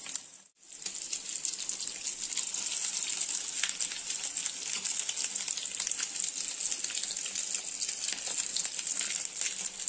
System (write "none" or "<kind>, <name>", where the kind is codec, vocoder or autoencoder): none